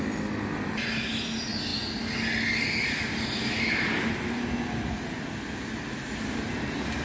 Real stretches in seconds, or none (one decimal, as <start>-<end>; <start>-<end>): 0.0-7.0